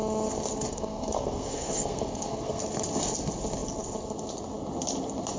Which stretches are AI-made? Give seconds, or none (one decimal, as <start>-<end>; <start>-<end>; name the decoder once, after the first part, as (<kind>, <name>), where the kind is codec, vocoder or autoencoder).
0.7-2.6 (codec, SNAC)